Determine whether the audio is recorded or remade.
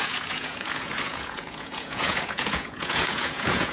remade